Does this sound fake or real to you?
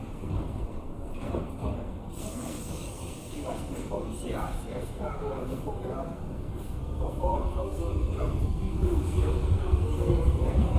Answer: fake